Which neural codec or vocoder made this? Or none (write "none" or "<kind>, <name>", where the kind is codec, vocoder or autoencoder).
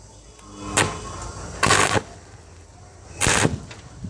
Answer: none